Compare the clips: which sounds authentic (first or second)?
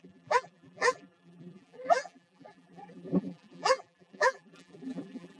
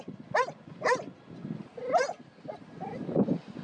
second